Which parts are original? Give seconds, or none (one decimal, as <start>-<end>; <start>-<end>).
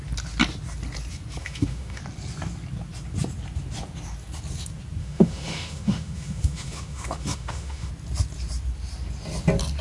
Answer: 0.0-1.4; 2.0-5.0; 7.9-9.8